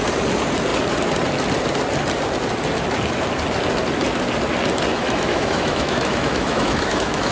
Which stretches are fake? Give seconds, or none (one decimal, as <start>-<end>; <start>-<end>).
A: 4.9-7.3